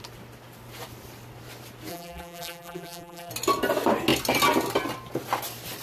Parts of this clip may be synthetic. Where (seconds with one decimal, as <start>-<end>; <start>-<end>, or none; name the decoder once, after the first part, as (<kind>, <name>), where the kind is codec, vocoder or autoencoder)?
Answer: 1.9-3.3 (vocoder, BigVGAN v2)